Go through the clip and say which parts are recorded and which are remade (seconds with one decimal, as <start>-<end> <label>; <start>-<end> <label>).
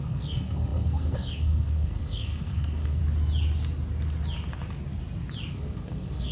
0.0-3.0 remade; 3.0-5.5 recorded; 5.5-6.3 remade